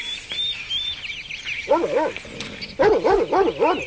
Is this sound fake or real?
real